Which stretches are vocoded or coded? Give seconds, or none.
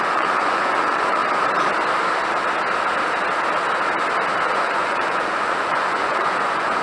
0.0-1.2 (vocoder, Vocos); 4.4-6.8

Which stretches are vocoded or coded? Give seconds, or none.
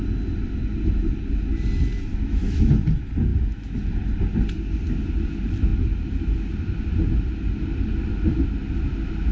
2.1-2.7 (autoencoder, DAC-VAE); 3.3-3.8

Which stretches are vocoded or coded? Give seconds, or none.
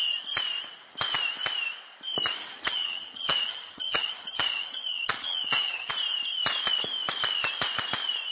2.4-5.9 (vocoder, HiFi-GAN)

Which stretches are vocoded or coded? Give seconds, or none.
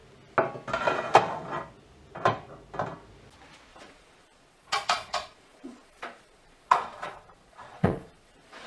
3.7-8.7 (vocoder, Vocos)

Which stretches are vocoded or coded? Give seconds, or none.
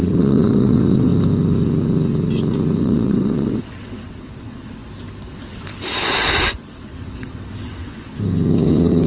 0.0-1.1 (vocoder, WaveNeXt); 2.8-4.8; 6.7-8.1; 8.7-9.1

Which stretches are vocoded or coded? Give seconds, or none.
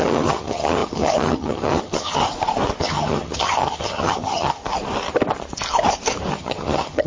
0.0-2.2 (vocoder, HiFi-GAN); 2.8-4.6; 6.3-7.1